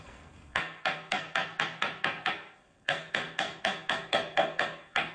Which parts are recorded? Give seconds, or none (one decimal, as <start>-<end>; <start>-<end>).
none